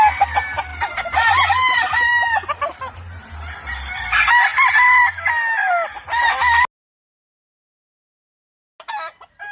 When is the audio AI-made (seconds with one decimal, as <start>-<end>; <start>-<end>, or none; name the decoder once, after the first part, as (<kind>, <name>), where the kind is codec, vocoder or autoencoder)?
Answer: none